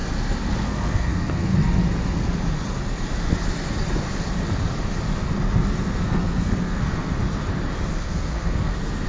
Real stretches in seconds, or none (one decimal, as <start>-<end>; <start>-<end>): 0.0-0.5; 1.5-5.8; 7.2-7.9